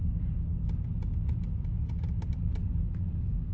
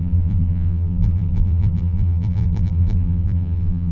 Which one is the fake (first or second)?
second